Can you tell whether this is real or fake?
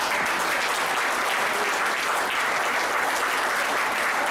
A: real